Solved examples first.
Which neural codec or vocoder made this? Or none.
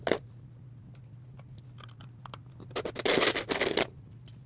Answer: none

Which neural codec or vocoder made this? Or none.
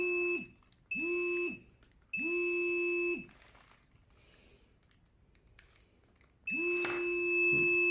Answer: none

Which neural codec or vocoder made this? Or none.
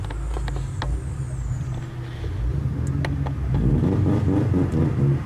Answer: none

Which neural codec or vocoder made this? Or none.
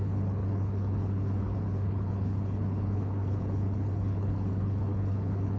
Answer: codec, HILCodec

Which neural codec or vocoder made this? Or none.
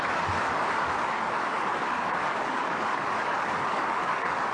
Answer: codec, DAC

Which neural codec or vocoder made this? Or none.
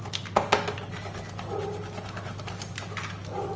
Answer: none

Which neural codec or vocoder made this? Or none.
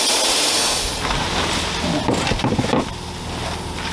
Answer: none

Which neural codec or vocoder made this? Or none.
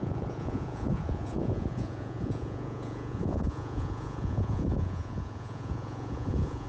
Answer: vocoder, Vocos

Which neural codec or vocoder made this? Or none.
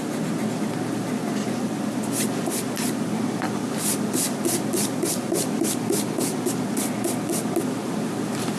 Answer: none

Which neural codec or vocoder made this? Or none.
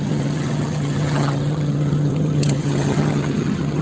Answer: vocoder, HiFi-GAN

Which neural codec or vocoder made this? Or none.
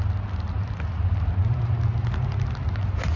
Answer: none